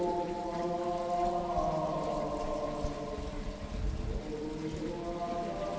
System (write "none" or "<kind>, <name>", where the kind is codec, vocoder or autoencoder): none